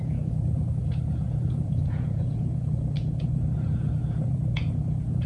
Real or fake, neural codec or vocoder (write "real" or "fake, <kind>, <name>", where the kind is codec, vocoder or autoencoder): fake, vocoder, Vocos